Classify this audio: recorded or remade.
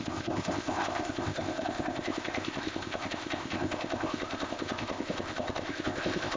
remade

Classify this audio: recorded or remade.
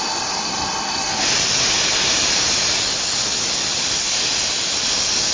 recorded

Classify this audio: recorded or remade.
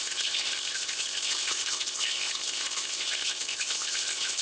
remade